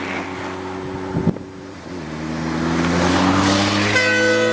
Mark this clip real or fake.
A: real